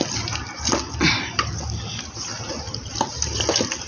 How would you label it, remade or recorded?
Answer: recorded